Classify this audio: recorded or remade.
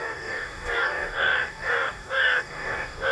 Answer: remade